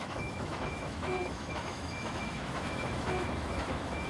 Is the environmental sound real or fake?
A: fake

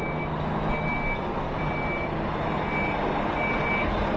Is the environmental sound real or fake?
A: real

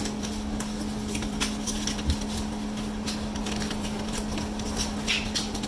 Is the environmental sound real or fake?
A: real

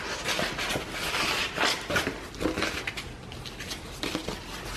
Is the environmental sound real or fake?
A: real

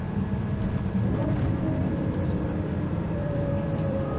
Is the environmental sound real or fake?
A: fake